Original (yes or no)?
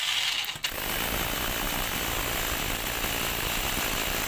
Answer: yes